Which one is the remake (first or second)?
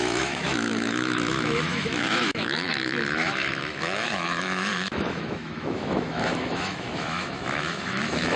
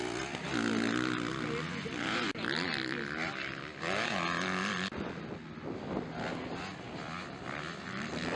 first